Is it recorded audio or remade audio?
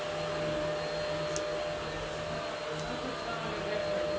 recorded